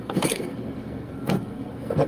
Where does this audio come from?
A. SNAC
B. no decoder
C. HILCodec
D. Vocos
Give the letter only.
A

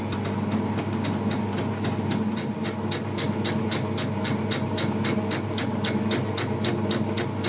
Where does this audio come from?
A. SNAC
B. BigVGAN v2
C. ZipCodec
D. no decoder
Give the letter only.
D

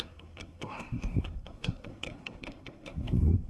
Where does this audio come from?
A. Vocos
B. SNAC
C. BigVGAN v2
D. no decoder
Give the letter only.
B